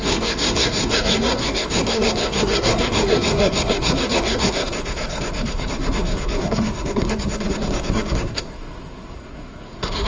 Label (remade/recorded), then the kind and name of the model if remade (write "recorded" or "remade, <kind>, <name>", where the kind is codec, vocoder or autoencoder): remade, codec, SNAC